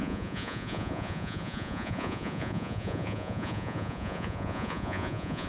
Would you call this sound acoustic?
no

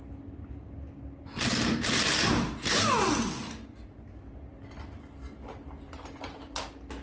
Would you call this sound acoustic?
yes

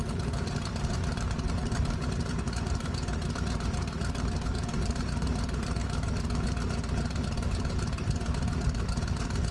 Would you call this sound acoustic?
no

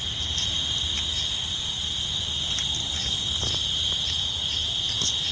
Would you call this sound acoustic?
yes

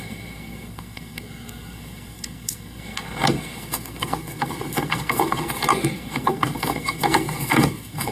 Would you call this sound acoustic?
no